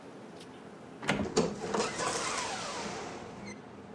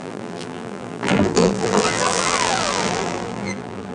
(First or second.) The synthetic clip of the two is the second